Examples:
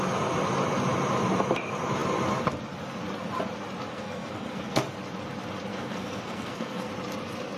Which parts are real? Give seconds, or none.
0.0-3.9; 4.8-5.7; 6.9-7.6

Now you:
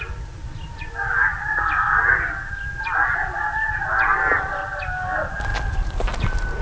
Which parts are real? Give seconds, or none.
0.0-6.6

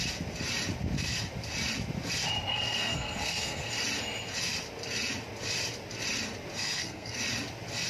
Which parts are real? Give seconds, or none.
0.0-2.5; 3.7-6.6; 7.2-7.9